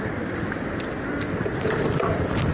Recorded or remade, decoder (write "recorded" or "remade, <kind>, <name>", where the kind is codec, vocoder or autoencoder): recorded